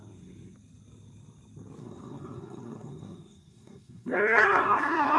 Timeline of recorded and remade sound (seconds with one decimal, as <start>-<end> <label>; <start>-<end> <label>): 0.0-1.8 recorded; 1.8-5.2 remade